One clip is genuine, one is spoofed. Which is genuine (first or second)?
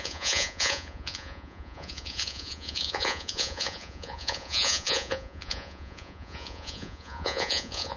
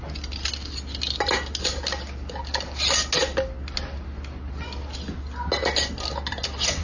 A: second